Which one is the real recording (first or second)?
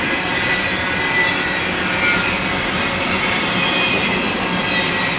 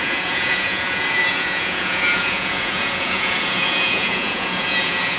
first